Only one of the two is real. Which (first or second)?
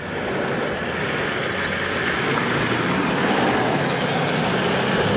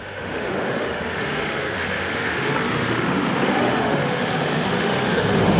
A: first